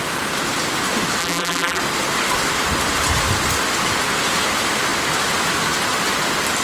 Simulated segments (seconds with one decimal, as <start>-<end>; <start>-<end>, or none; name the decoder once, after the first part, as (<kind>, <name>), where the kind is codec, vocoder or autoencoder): 1.2-1.8 (vocoder, BigVGAN v2)